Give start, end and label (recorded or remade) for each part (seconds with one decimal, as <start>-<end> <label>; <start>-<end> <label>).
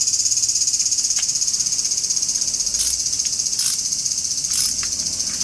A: 0.0-5.4 recorded